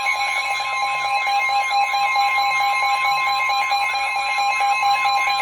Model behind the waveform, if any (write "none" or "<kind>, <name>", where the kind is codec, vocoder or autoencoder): autoencoder, DAC-VAE